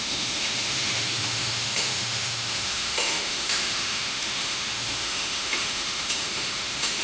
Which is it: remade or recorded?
remade